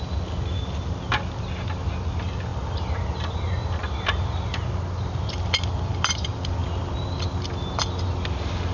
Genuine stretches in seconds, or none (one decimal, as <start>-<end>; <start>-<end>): 0.0-8.7

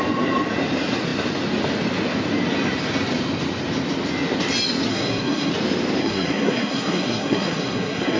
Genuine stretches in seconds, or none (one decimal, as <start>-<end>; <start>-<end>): 0.0-4.9; 5.5-6.0

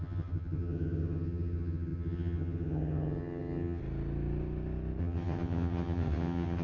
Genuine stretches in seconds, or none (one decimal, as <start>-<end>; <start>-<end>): 3.8-5.0

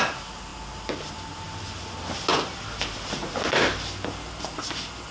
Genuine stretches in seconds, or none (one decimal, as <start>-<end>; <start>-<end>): 0.0-5.1

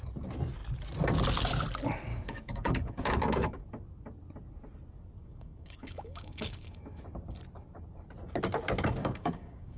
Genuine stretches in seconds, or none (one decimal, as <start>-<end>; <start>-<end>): 0.0-2.1; 3.6-5.2; 7.0-9.0

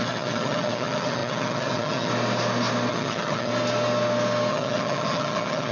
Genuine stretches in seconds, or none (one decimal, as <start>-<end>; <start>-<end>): 2.1-2.9; 3.5-4.5

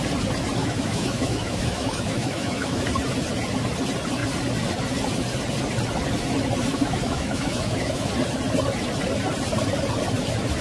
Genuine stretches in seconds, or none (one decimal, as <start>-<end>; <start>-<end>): 0.0-0.6; 2.8-6.7; 8.1-10.6

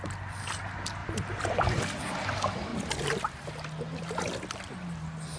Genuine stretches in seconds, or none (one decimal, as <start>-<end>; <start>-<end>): 0.0-5.4